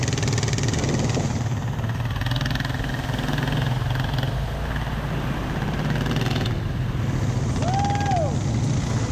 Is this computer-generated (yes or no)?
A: no